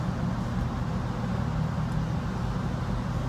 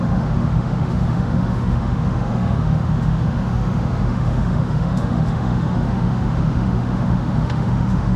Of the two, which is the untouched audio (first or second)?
first